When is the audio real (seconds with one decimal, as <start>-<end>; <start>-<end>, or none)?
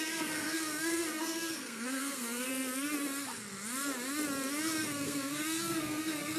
2.5-4.8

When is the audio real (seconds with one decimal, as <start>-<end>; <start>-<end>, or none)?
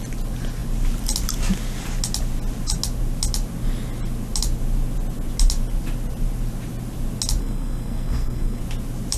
0.0-7.4; 8.6-9.2